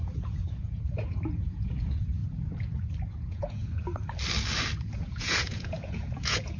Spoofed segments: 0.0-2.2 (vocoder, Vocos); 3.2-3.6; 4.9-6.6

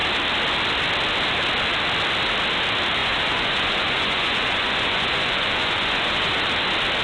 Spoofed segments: 3.0-6.3 (vocoder, Vocos)

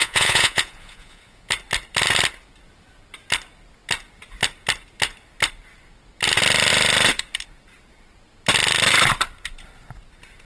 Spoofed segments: 0.0-1.5 (vocoder, Vocos)